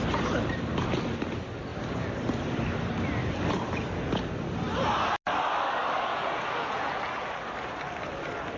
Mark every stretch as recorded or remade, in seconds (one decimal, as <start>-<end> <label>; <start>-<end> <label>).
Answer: 0.0-6.1 recorded; 6.1-7.0 remade; 7.0-8.6 recorded